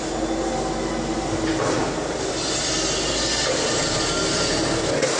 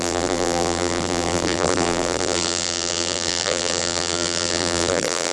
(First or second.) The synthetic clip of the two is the second